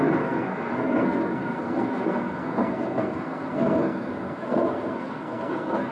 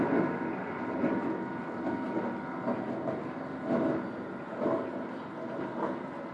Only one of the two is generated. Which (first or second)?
first